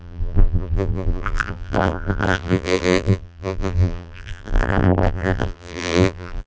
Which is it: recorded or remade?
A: remade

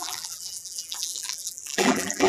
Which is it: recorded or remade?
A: remade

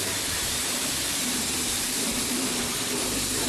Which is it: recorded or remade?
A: remade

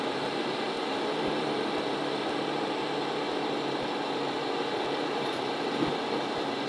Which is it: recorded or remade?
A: remade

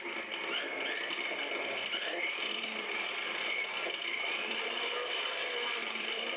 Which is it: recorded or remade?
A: remade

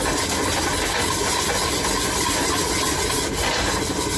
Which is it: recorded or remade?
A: recorded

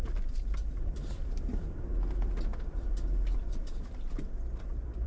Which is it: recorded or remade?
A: remade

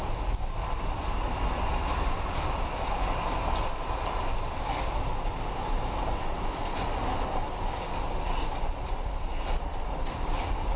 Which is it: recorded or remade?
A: remade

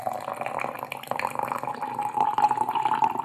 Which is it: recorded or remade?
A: recorded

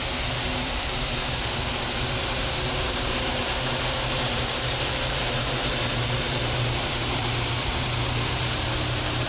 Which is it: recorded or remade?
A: remade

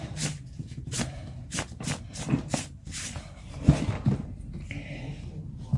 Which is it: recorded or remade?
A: remade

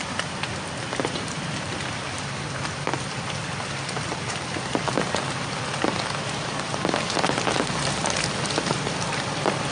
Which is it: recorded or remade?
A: remade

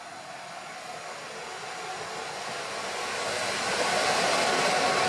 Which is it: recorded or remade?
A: recorded